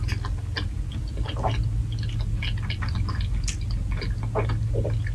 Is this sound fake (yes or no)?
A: no